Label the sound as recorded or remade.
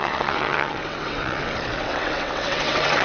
remade